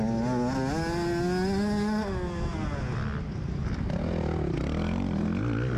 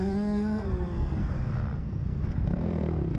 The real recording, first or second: first